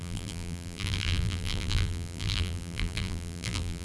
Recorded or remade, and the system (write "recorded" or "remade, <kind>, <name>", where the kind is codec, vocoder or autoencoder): remade, vocoder, BigVGAN v2